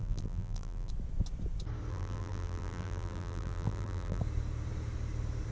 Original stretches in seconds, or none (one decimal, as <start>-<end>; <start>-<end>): 0.9-1.9; 4.2-5.5